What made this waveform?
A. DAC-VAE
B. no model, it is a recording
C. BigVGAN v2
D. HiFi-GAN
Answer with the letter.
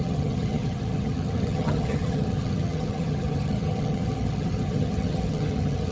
D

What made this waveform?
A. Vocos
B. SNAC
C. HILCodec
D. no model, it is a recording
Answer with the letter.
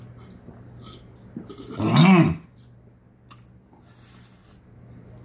D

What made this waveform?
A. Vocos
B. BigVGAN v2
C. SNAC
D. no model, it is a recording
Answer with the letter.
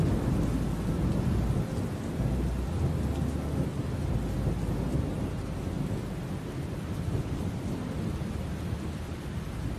D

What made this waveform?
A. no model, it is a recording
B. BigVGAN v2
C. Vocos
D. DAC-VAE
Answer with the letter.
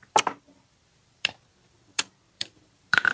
B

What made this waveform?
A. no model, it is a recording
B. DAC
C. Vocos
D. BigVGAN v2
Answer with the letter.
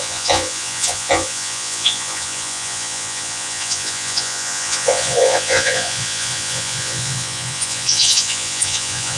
C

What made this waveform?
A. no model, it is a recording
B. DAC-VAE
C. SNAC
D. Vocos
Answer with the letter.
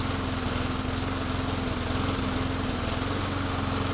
A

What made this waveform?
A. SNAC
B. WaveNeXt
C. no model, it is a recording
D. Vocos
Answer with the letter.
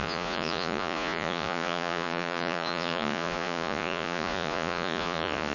D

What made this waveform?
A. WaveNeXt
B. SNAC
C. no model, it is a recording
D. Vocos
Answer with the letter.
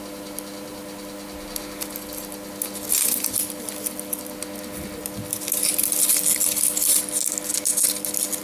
C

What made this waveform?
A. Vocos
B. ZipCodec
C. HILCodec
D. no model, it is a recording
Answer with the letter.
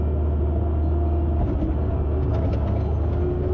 D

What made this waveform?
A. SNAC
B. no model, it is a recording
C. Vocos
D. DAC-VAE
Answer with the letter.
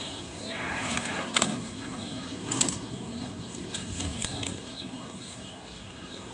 A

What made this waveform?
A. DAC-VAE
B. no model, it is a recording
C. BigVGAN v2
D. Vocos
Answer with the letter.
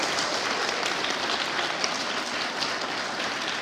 C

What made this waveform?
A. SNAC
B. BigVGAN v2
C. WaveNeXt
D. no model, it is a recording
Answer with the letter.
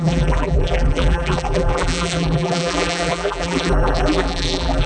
B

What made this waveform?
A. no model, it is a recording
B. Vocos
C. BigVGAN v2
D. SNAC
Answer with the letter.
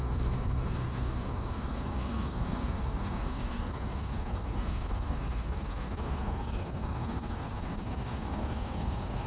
D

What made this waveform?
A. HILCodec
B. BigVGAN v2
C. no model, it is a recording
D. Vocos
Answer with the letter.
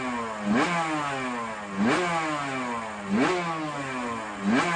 C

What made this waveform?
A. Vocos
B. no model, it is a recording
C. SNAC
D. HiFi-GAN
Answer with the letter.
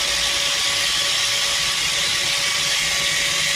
B